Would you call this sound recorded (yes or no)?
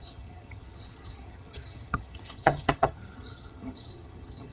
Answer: no